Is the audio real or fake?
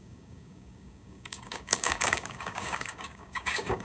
fake